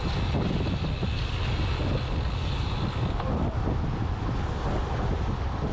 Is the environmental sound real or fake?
real